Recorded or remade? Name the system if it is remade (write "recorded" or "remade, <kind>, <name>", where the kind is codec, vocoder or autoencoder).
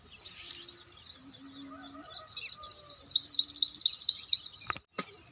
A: recorded